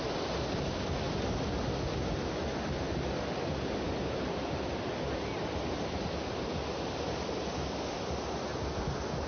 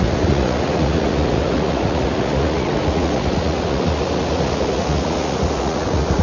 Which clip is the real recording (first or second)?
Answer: first